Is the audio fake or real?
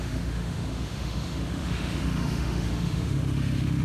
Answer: fake